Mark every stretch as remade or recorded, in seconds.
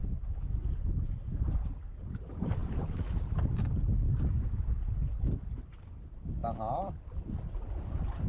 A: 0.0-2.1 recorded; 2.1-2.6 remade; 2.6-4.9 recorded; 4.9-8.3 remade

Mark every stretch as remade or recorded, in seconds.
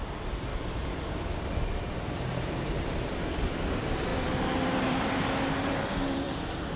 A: 0.0-0.5 remade; 0.5-1.3 recorded; 1.3-6.8 remade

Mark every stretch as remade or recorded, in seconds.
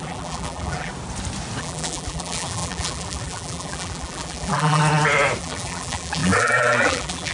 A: 0.0-0.9 remade; 0.9-1.6 recorded; 1.6-4.8 remade; 4.8-5.4 recorded; 5.4-7.3 remade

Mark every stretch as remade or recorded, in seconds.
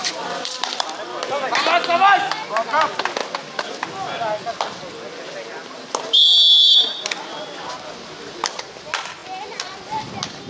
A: 0.0-1.1 remade; 1.1-10.5 recorded